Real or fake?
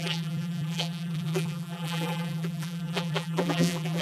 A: fake